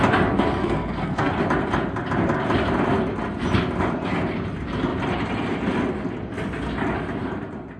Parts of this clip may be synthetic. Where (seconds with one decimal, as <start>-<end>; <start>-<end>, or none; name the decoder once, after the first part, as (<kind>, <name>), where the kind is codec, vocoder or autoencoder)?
0.6-1.3 (codec, SNAC)